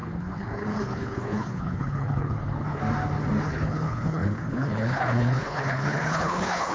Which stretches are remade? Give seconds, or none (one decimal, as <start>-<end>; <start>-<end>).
0.0-2.8; 3.4-6.7